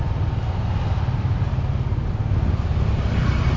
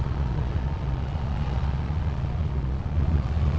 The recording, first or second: first